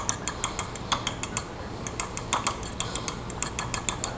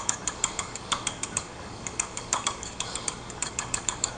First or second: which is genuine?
first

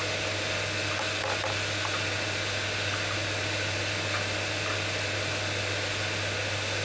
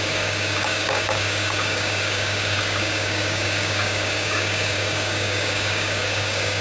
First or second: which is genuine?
first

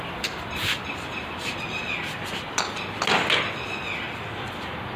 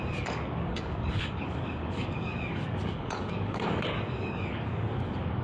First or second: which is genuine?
first